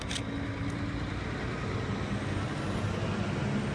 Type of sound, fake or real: real